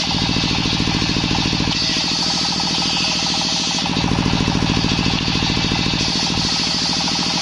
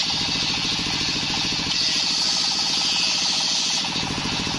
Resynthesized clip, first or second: second